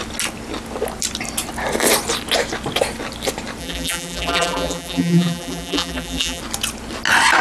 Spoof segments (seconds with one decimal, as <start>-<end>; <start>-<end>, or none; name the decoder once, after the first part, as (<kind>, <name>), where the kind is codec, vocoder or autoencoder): 3.6-6.4 (vocoder, BigVGAN v2)